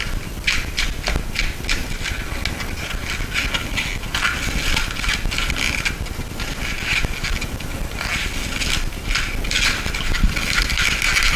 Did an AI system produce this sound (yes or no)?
no